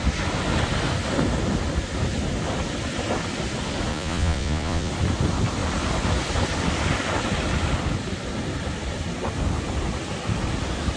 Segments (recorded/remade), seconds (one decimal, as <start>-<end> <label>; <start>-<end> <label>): 0.0-3.9 recorded; 3.9-4.9 remade; 4.9-11.0 recorded